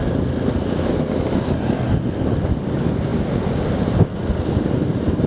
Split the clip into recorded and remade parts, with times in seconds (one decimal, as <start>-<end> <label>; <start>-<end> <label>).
0.0-5.3 recorded